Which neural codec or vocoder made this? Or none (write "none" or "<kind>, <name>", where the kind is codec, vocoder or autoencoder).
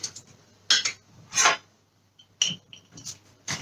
none